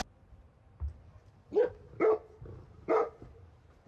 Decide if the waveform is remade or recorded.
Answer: recorded